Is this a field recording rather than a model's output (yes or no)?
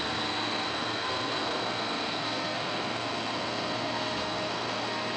no